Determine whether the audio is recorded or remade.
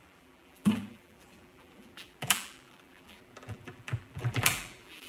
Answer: remade